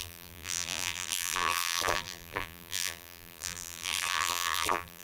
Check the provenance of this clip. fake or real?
fake